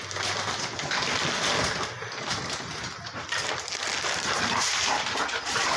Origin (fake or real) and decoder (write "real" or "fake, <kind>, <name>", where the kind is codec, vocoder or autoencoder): real